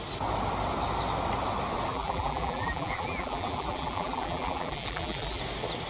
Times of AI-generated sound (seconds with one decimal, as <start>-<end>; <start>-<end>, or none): 1.9-5.4